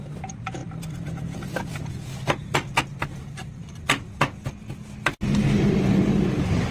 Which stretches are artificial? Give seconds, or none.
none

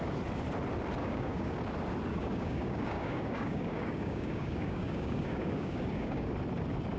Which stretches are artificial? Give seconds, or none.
1.0-1.6 (codec, DAC); 2.1-6.3

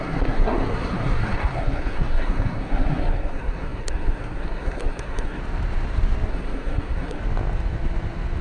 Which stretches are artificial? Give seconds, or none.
0.0-5.4 (codec, SNAC); 6.3-7.2